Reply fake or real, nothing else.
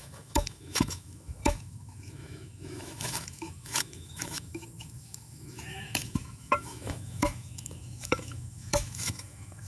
fake